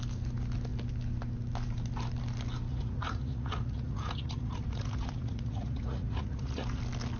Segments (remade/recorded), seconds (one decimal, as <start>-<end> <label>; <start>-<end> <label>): 0.0-2.7 recorded; 2.7-6.8 remade; 6.8-7.2 recorded